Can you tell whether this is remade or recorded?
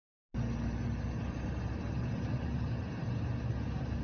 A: recorded